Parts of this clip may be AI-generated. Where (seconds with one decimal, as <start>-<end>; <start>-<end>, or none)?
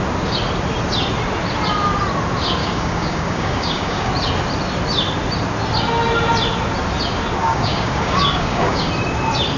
2.6-4.1; 7.4-8.9